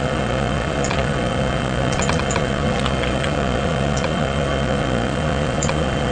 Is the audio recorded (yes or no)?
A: no